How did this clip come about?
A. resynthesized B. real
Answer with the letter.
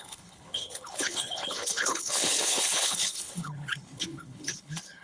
A